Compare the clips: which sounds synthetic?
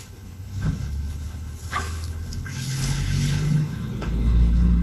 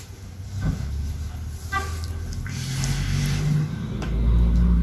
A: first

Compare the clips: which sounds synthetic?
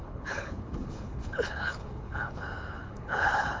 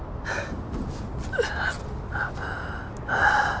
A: first